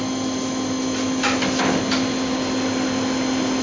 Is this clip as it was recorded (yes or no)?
yes